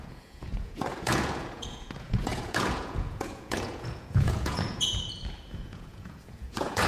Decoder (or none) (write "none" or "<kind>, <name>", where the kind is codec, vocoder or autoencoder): vocoder, Vocos